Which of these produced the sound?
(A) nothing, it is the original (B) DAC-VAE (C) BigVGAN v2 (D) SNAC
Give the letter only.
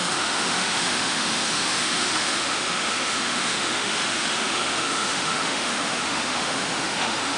B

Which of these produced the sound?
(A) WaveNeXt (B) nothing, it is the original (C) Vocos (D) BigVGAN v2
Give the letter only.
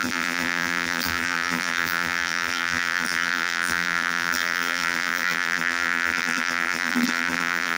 D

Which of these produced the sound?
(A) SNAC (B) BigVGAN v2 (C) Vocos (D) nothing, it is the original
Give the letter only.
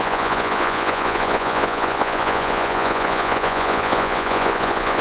C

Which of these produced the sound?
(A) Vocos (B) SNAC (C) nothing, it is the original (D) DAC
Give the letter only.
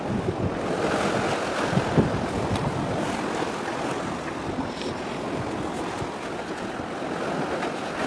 C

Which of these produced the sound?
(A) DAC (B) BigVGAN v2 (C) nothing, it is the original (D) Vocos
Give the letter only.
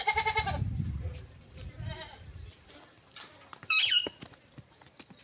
B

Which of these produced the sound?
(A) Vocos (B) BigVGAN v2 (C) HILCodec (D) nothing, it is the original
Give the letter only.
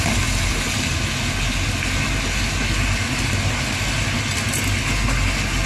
D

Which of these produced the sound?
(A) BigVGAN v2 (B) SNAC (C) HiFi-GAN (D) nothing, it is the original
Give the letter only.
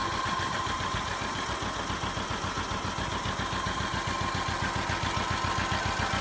D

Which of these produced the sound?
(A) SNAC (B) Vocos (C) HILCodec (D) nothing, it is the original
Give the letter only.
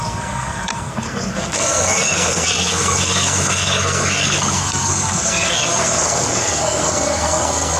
A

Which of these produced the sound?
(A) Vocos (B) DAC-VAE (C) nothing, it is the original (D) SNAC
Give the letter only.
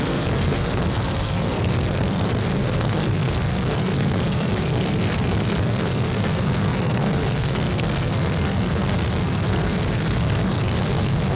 D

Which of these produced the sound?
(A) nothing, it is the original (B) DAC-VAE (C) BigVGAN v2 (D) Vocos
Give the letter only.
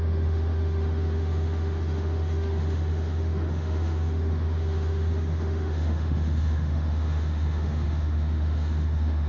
B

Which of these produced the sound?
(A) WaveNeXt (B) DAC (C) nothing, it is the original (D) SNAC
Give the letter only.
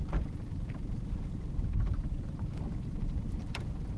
C